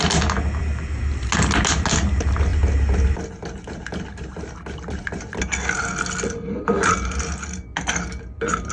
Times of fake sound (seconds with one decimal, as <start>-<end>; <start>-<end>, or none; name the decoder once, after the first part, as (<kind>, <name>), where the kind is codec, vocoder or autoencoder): none